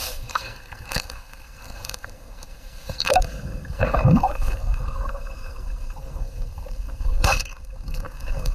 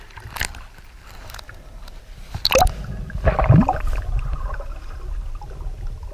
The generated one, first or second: first